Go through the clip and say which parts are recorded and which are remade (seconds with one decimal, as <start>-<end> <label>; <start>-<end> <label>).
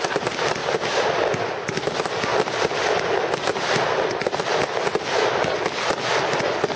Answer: 0.0-0.6 recorded; 0.6-1.9 remade; 1.9-6.8 recorded